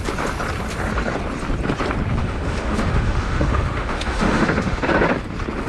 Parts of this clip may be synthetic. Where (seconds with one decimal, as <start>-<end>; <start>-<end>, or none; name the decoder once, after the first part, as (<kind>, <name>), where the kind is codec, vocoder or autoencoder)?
2.2-4.8 (autoencoder, DAC-VAE)